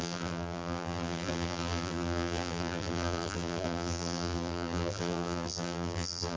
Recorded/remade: remade